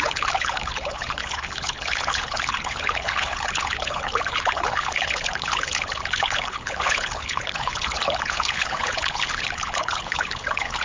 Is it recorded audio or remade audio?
remade